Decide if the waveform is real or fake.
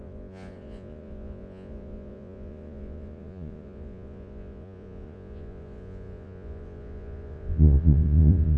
fake